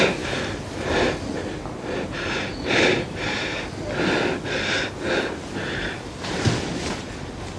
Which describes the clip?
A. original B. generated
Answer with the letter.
A